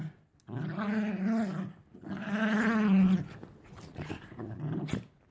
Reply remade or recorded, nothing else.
recorded